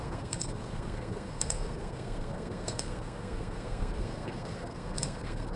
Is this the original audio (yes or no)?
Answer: no